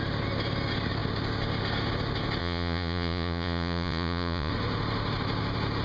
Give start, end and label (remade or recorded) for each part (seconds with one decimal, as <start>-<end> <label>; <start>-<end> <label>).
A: 0.0-2.4 recorded; 2.4-4.5 remade; 4.5-5.8 recorded

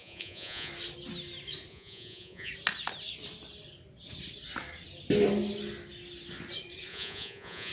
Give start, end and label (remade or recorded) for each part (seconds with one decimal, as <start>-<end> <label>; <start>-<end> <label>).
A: 0.0-0.7 remade; 0.7-1.7 recorded; 1.7-2.5 remade; 2.5-6.9 recorded; 6.9-7.7 remade

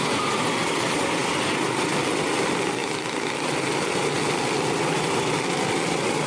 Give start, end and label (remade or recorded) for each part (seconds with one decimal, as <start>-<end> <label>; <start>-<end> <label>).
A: 0.0-6.3 recorded

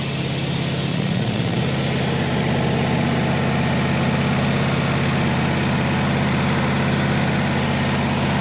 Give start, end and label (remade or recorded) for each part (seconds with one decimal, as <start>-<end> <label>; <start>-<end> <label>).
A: 0.0-0.9 recorded; 0.9-1.6 remade; 1.6-8.4 recorded

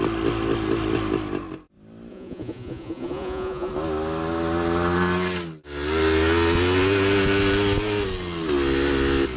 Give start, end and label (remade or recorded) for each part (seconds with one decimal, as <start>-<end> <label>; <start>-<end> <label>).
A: 0.0-2.1 recorded; 2.1-3.7 remade; 3.7-9.4 recorded

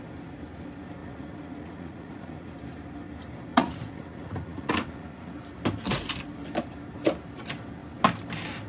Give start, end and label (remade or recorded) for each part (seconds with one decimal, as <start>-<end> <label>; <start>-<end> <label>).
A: 0.0-1.0 recorded; 1.0-2.5 remade; 2.5-3.5 recorded; 3.5-5.3 remade; 5.3-8.7 recorded

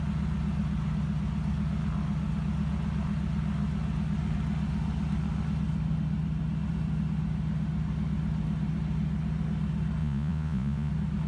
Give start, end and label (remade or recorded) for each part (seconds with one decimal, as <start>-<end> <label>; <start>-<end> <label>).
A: 0.0-10.0 recorded; 10.0-10.9 remade; 10.9-11.3 recorded